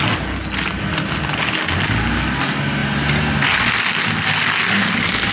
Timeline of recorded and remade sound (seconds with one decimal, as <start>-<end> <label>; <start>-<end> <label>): 0.0-5.3 recorded